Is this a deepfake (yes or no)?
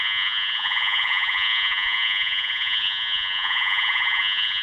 yes